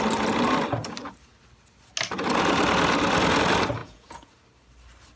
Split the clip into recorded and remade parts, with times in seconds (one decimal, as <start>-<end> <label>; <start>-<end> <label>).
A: 0.0-3.8 recorded; 3.8-4.3 remade; 4.3-5.2 recorded